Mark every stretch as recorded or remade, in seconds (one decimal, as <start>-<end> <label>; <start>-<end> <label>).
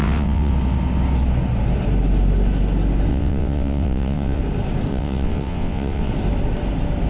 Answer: 0.0-0.5 remade; 0.5-3.1 recorded; 3.1-4.4 remade; 4.4-4.9 recorded; 4.9-6.1 remade; 6.1-7.1 recorded